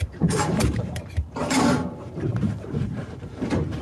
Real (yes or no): no